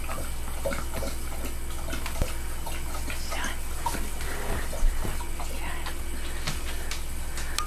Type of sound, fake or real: real